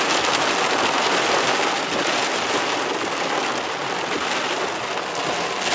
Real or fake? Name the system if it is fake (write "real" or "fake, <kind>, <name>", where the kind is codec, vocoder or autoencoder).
real